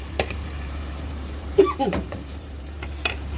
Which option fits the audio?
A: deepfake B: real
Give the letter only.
A